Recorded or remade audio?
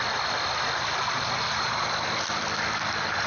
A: recorded